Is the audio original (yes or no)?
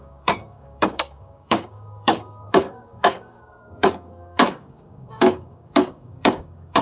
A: no